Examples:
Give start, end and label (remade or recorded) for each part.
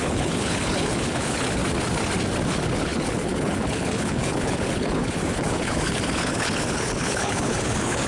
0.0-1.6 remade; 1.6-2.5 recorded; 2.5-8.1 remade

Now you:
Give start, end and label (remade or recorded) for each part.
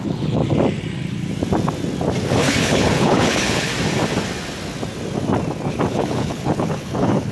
0.0-0.4 remade; 0.4-2.3 recorded; 2.3-3.7 remade; 3.7-5.9 recorded; 5.9-7.3 remade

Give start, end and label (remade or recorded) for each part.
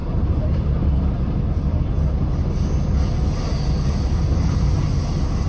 0.0-5.5 recorded